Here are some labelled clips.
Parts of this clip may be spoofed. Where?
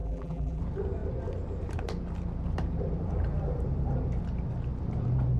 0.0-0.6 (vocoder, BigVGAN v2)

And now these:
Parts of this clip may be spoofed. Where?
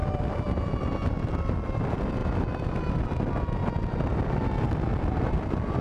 0.0-3.6 (vocoder, BigVGAN v2); 5.2-5.8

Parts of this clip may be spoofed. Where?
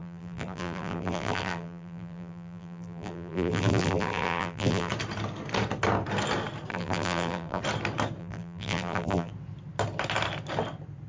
0.0-4.9 (vocoder, BigVGAN v2); 6.7-7.6; 8.2-9.3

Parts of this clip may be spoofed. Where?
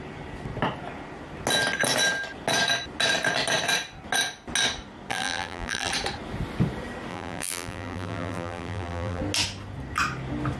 5.1-5.9 (vocoder, BigVGAN v2); 7.1-9.2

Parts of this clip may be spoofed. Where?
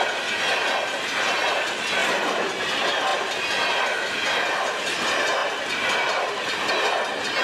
3.1-3.8 (vocoder, BigVGAN v2); 5.4-6.7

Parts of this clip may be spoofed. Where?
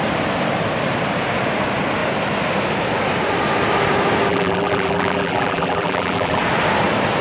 4.3-6.4 (vocoder, BigVGAN v2)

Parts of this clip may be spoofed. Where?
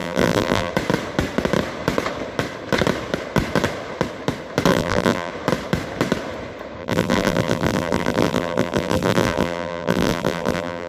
0.0-0.7 (vocoder, BigVGAN v2); 4.7-5.3; 6.8-10.9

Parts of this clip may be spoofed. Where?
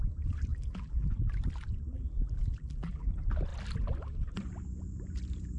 0.5-1.1 (vocoder, BigVGAN v2); 1.9-3.1